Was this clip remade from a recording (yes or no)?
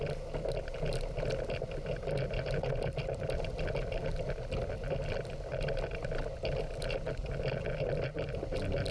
no